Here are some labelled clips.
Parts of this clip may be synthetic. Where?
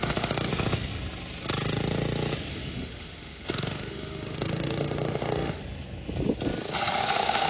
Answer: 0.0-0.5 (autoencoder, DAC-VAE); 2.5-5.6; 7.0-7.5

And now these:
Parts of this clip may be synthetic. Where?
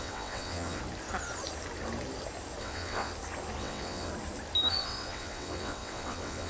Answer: 0.0-0.8 (vocoder, WaveNeXt); 2.6-3.1; 3.6-4.1; 4.7-6.5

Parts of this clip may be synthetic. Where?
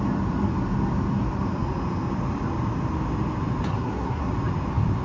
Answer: 3.7-4.3 (codec, SNAC)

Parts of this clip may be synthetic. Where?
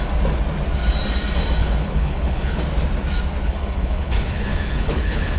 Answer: 1.6-2.6 (codec, HILCodec); 3.4-5.4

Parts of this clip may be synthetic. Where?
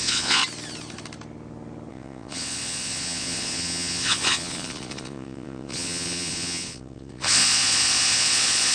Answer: 0.0-0.4 (vocoder, Vocos); 1.9-8.7